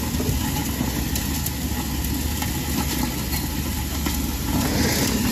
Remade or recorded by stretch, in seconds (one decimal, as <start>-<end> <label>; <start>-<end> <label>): 0.0-5.3 recorded